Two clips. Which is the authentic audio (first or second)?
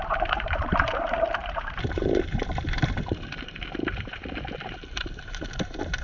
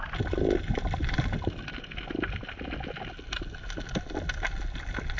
second